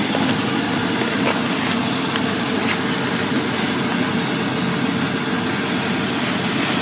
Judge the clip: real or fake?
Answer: real